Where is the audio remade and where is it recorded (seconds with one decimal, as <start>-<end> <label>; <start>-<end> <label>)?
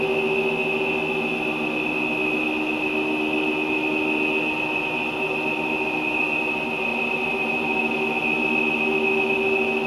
0.0-6.9 recorded; 6.9-7.9 remade; 7.9-9.9 recorded